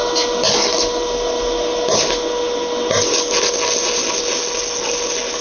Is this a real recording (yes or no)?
yes